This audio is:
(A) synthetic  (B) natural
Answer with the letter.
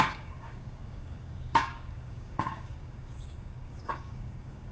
A